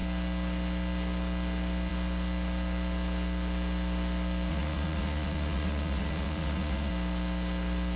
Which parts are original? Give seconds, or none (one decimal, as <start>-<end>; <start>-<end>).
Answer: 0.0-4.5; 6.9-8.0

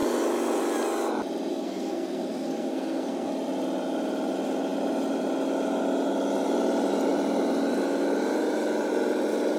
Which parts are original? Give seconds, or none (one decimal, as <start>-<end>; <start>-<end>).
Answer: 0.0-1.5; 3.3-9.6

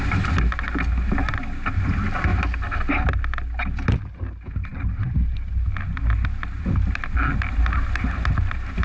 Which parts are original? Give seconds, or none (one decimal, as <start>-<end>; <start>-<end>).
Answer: 0.0-8.8